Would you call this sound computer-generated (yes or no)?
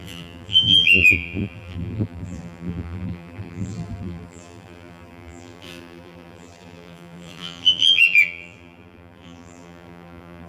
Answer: yes